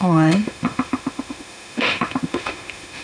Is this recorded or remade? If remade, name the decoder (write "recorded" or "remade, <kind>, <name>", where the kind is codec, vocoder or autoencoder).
remade, autoencoder, DAC-VAE